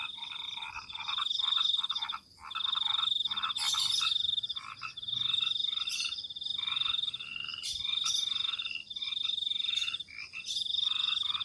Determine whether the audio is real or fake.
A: real